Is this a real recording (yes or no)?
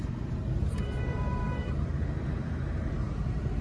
no